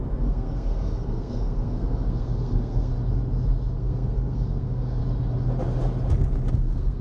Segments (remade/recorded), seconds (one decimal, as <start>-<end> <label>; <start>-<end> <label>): 0.0-2.9 remade; 2.9-3.8 recorded; 3.8-5.0 remade; 5.0-6.5 recorded; 6.5-7.0 remade